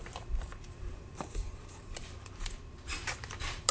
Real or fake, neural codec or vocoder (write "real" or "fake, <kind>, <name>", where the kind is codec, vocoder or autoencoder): fake, vocoder, BigVGAN v2